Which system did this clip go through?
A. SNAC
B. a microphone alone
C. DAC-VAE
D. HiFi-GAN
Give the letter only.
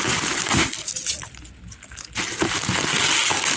B